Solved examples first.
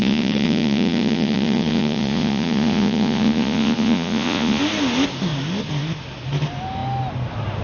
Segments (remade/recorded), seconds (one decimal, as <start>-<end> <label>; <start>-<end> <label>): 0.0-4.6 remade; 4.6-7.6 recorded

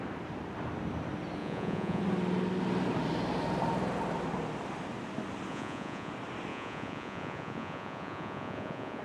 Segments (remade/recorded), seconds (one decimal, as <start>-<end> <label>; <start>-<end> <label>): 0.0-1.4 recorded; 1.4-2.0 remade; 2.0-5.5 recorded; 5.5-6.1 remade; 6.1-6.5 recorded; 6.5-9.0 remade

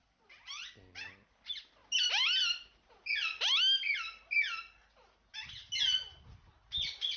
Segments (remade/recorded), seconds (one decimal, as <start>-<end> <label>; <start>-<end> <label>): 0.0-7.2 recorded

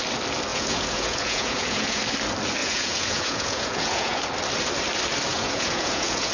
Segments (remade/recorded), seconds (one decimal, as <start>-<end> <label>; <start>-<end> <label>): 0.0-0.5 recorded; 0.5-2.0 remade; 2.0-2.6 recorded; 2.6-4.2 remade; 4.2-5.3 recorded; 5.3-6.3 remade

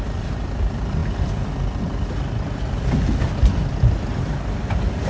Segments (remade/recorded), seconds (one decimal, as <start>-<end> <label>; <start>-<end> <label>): 0.0-5.1 recorded